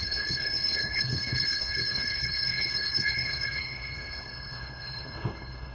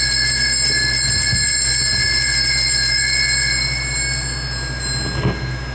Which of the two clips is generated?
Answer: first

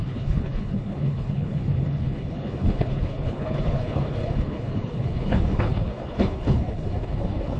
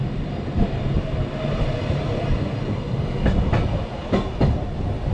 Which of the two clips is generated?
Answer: first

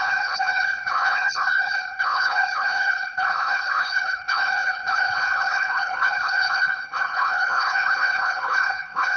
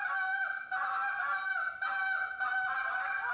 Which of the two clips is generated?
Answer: first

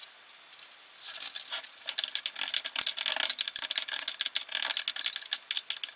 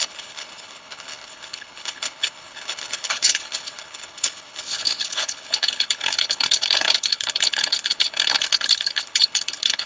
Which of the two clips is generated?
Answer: second